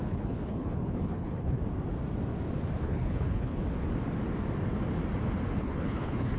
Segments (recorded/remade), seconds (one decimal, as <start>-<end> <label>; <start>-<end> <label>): 0.0-1.6 remade; 1.6-2.8 recorded; 2.8-3.6 remade; 3.6-5.6 recorded; 5.6-6.4 remade